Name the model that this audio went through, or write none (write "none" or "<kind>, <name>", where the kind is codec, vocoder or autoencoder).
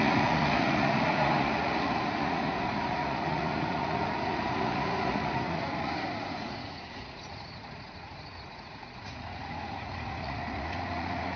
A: vocoder, Vocos